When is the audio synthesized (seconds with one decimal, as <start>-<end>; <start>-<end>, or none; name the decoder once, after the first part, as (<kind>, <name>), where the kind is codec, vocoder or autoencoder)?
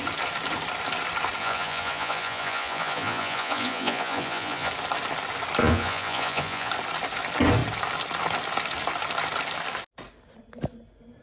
1.4-4.7 (vocoder, Vocos); 5.6-6.7